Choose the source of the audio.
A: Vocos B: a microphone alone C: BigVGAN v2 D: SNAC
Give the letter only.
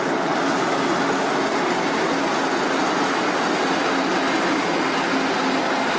B